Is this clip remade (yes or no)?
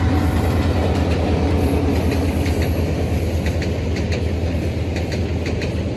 no